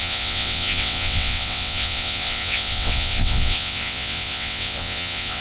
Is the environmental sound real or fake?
fake